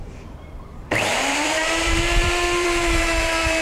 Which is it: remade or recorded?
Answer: remade